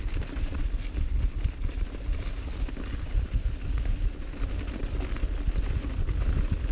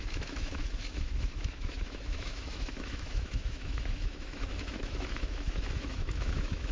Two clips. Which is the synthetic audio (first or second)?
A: second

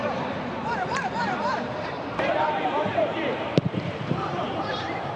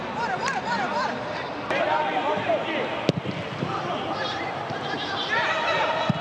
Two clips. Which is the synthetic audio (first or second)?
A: first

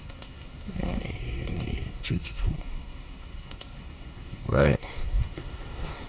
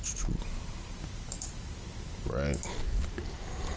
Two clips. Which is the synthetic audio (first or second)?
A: first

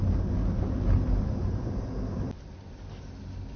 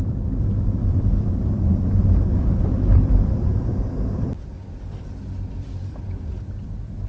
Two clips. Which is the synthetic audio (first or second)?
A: second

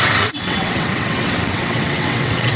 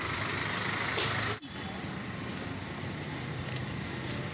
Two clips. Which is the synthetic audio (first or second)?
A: first